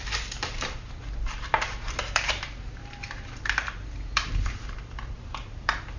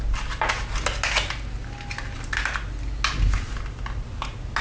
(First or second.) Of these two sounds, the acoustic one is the second